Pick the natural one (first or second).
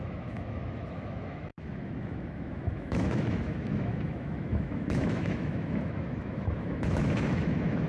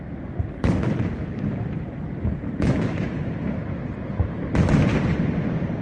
second